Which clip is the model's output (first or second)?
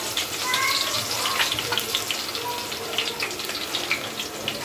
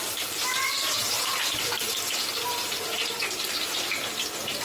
second